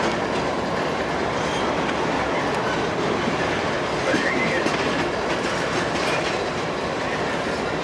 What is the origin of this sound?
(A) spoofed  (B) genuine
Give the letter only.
B